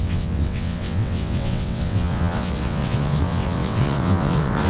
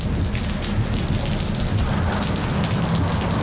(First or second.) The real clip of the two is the second